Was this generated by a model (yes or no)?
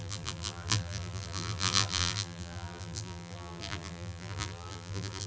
yes